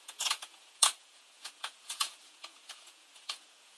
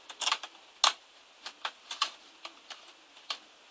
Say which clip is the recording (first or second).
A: second